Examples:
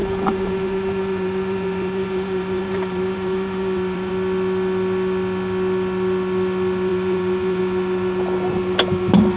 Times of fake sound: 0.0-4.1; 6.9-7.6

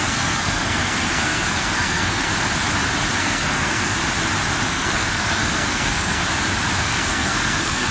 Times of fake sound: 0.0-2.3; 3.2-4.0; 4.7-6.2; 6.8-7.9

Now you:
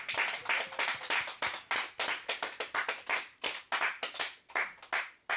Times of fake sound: none